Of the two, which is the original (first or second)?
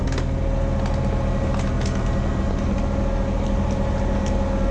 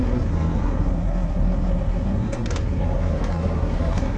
first